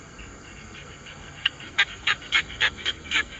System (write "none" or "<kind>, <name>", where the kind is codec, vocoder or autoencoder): codec, SNAC